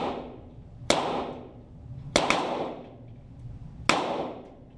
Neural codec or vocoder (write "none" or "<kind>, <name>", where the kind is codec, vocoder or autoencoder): none